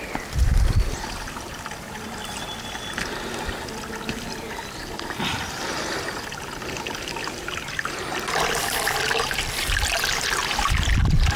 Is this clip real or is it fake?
real